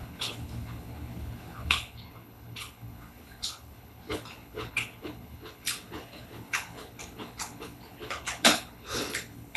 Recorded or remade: remade